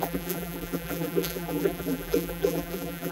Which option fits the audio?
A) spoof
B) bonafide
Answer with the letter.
A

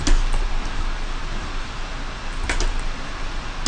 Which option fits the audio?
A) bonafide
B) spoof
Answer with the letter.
A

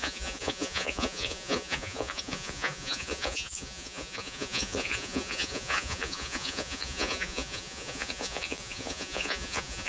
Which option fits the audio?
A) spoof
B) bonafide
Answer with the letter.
A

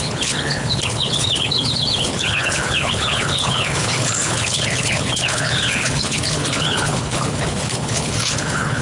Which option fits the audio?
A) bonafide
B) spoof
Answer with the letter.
B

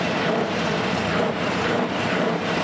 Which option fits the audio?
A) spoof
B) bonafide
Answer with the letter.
A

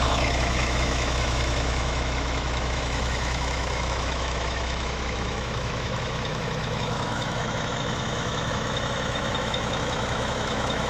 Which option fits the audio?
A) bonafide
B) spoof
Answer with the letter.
B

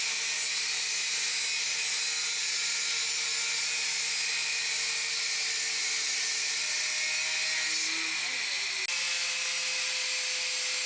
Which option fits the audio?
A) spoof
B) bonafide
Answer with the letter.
B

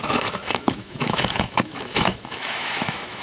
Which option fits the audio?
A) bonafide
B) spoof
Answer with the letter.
B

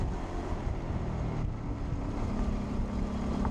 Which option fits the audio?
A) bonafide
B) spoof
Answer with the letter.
A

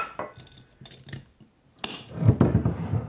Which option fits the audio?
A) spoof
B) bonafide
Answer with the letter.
B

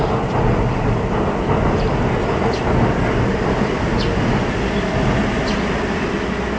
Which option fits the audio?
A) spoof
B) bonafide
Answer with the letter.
B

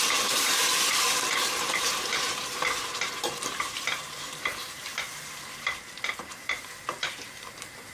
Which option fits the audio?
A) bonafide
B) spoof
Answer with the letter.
B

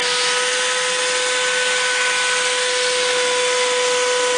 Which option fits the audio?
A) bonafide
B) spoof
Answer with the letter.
A